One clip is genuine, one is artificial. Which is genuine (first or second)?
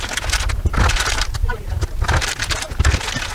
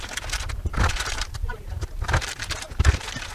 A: first